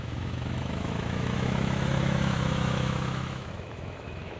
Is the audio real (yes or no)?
no